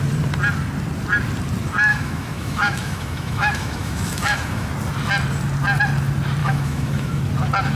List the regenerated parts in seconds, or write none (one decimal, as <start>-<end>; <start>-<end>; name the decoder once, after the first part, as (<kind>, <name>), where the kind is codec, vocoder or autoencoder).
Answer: 1.9-4.7 (autoencoder, DAC-VAE); 6.4-7.2